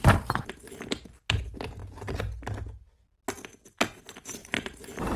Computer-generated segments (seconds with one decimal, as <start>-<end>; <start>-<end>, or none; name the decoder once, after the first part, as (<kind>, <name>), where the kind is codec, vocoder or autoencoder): 4.4-5.2 (vocoder, BigVGAN v2)